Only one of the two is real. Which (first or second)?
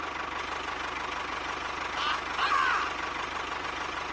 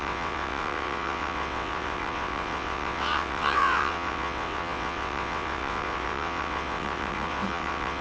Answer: first